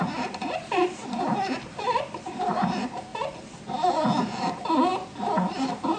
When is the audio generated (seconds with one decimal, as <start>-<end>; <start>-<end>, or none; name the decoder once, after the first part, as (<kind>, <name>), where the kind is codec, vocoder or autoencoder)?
0.0-3.1 (vocoder, BigVGAN v2); 4.2-4.9; 5.5-6.0